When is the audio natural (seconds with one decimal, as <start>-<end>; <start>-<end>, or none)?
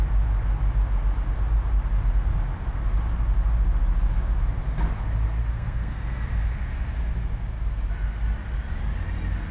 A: 0.0-5.4; 6.2-9.5